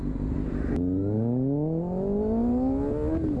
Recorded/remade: recorded